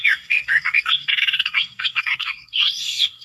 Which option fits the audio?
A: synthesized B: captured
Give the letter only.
A